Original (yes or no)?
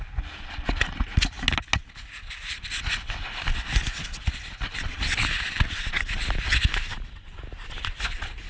yes